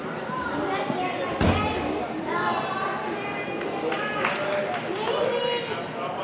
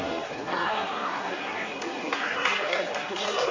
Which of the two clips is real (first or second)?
first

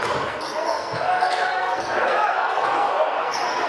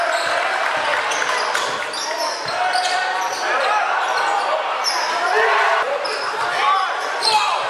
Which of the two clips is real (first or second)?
second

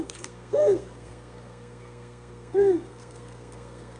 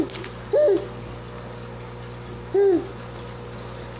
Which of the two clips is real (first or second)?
second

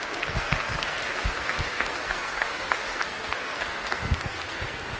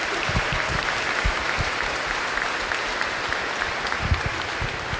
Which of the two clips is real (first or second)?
second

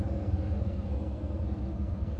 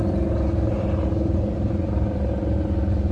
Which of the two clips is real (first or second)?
second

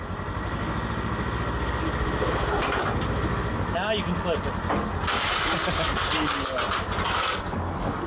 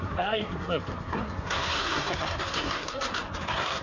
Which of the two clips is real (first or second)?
first